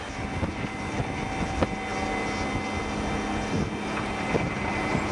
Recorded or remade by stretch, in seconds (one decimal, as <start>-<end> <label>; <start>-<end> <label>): 0.0-5.1 recorded